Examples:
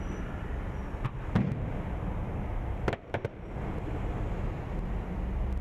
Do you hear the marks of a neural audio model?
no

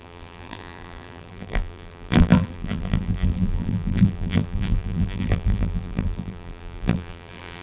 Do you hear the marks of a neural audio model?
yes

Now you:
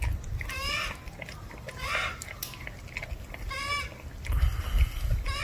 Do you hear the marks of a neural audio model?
no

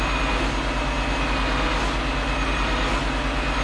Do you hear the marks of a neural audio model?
no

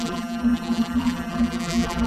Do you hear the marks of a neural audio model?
yes